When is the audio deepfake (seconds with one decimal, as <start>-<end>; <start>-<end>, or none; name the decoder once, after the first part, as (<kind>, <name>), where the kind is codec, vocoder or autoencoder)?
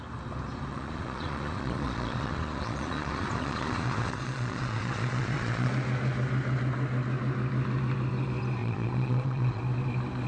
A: 0.7-5.7 (vocoder, Vocos); 8.6-9.6